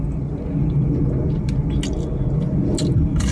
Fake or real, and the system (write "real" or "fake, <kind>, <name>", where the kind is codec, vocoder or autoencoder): real